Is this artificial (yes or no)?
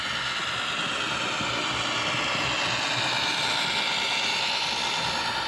no